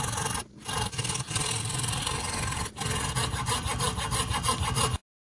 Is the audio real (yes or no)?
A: yes